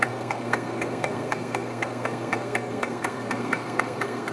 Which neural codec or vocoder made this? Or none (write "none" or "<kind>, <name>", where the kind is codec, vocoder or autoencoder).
codec, SNAC